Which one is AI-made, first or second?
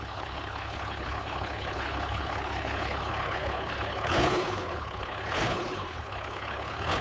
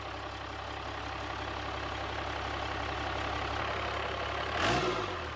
first